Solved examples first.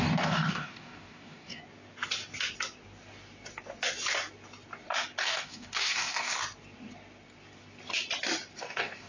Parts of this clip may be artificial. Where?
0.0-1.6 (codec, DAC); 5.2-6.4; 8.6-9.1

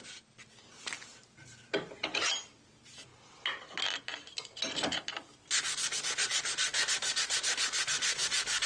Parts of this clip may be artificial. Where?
none